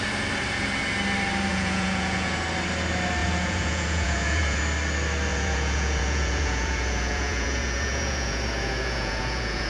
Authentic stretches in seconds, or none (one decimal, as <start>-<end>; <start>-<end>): 0.0-1.5; 2.4-3.2; 4.6-5.3